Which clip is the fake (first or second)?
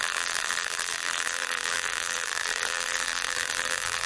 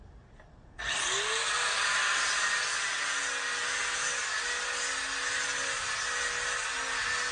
first